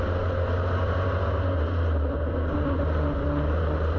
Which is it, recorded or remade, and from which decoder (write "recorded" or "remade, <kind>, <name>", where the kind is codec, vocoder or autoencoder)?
recorded